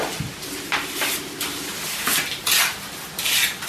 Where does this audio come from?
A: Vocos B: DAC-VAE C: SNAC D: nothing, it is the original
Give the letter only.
D